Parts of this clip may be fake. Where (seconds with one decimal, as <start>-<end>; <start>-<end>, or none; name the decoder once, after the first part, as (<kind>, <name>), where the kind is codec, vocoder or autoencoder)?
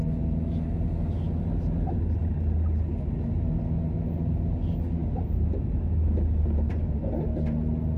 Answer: 5.0-5.8 (vocoder, BigVGAN v2)